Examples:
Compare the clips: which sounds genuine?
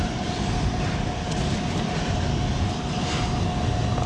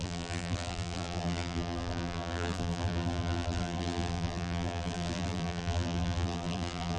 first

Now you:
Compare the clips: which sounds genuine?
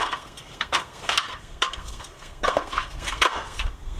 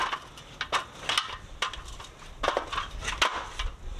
second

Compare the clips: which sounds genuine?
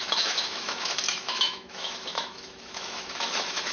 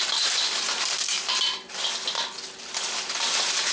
second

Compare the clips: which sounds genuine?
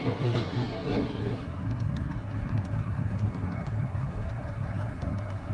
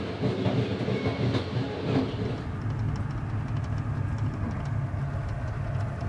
second